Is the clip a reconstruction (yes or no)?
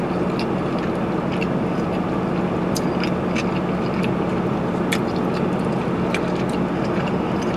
no